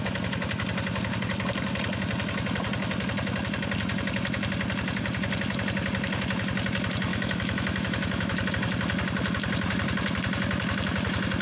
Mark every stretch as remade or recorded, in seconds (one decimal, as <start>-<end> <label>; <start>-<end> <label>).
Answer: 0.0-7.1 recorded; 7.1-8.5 remade; 8.5-11.4 recorded